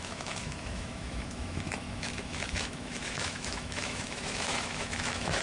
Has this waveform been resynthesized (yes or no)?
yes